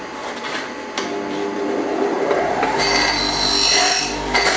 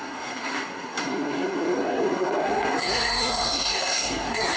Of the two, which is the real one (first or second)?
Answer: first